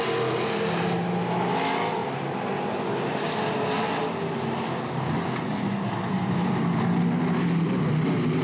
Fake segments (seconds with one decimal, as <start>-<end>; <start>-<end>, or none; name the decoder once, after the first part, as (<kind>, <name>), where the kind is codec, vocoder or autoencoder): none